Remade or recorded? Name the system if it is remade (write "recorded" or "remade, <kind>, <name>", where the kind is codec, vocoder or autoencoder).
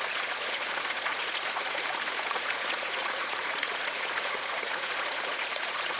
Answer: remade, vocoder, Vocos